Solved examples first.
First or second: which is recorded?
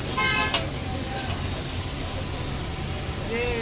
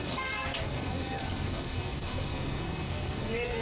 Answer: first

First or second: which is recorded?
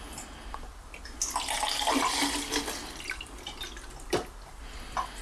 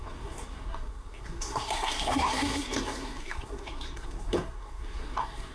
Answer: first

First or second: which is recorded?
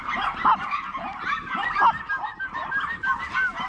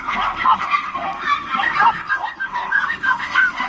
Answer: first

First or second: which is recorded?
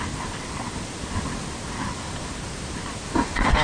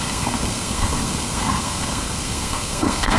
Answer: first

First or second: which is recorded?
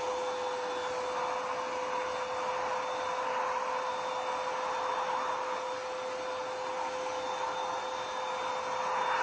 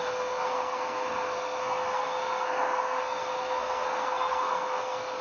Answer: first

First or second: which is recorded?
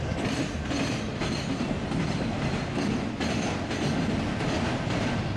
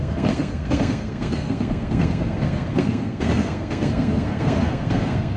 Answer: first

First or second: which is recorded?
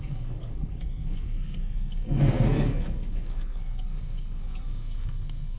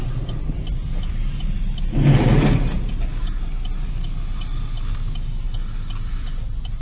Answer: second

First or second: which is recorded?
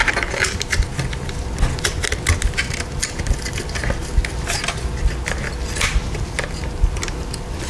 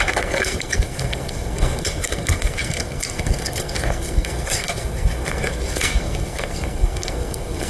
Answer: first